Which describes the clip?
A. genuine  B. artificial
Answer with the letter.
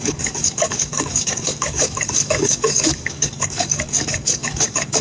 B